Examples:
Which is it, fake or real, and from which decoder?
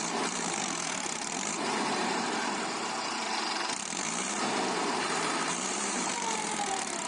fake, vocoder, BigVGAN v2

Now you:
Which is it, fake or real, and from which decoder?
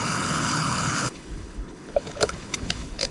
fake, codec, HILCodec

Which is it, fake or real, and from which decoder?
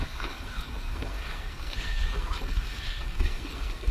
fake, codec, SNAC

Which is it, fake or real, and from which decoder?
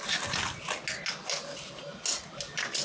real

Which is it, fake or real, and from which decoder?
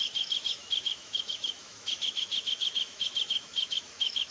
fake, autoencoder, DAC-VAE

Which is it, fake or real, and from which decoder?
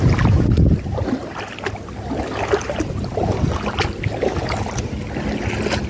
real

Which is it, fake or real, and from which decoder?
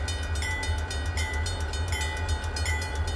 real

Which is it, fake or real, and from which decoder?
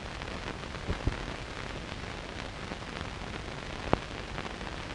real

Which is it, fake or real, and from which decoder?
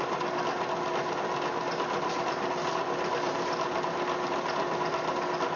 real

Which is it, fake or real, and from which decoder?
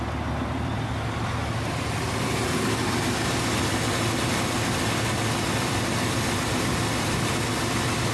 real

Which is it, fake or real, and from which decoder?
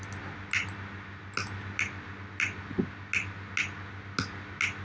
real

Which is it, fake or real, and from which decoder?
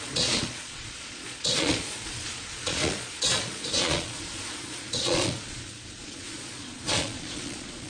fake, vocoder, Vocos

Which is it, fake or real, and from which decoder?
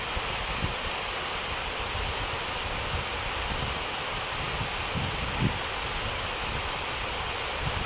real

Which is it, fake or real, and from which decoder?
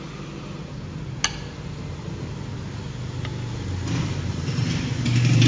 real